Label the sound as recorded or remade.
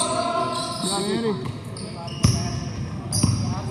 recorded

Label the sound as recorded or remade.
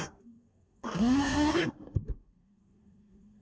remade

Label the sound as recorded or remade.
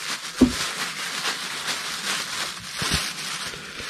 recorded